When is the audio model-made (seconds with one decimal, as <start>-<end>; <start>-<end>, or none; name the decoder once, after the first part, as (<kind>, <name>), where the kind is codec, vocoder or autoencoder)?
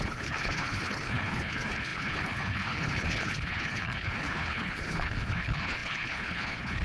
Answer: 0.0-6.8 (codec, HILCodec)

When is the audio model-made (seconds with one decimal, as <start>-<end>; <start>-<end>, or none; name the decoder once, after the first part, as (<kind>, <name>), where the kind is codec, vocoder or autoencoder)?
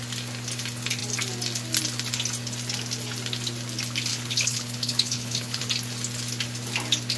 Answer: 4.1-5.6 (codec, HILCodec)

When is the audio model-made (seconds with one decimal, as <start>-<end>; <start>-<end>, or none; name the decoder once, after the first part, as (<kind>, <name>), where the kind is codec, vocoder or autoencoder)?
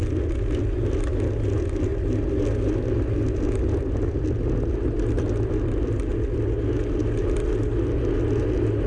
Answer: none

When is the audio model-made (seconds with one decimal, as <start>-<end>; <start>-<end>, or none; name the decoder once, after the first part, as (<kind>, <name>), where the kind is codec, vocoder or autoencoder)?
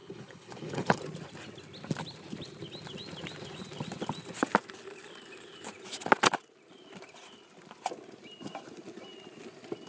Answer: 0.0-1.0 (codec, HILCodec)